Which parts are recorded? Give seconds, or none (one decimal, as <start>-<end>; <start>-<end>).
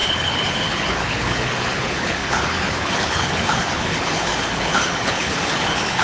none